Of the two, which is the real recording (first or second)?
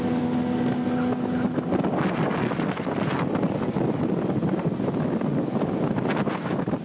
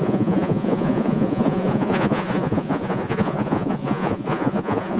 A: first